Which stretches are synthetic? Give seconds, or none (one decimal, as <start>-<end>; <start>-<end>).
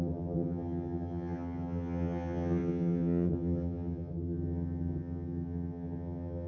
0.0-6.5